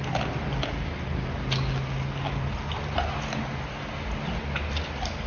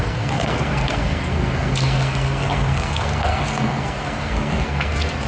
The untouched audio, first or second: first